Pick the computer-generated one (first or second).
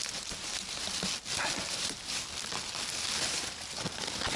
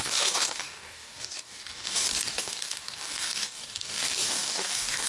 second